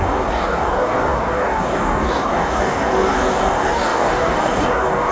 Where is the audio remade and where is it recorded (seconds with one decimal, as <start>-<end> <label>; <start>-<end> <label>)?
0.0-5.1 remade